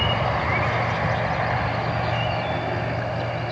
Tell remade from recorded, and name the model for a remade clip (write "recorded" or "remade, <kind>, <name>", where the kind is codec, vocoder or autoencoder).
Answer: recorded